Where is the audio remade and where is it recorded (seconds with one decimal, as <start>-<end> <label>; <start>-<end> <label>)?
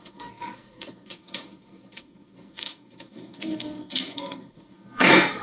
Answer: 0.0-5.4 remade